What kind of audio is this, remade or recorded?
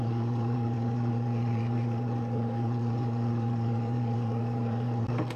remade